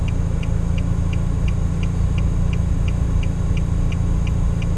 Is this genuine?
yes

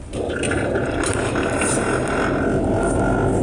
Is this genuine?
yes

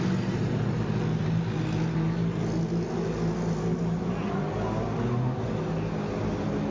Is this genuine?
yes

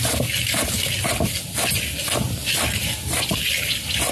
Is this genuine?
yes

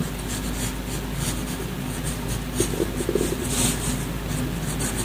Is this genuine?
yes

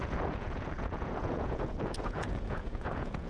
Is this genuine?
no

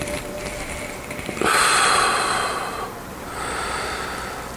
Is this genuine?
yes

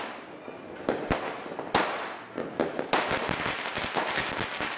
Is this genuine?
yes